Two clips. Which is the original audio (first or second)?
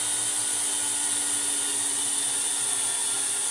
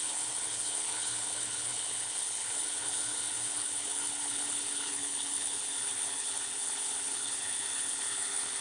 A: first